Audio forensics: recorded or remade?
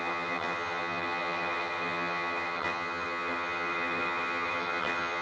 remade